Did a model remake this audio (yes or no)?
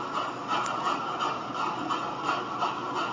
no